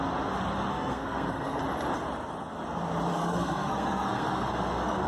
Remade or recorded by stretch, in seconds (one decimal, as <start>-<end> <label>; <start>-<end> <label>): 0.0-0.7 recorded; 0.7-1.6 remade; 1.6-3.1 recorded; 3.1-5.1 remade